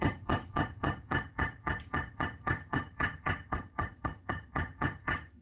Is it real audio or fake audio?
fake